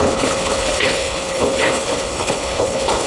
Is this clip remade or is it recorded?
remade